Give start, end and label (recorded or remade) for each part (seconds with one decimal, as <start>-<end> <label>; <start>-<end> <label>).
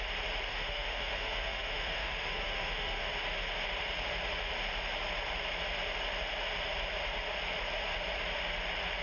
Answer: 0.0-0.5 recorded; 0.5-3.1 remade; 3.1-9.0 recorded